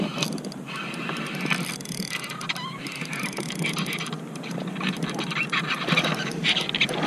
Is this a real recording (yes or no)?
yes